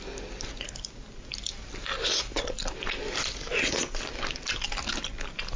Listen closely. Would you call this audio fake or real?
real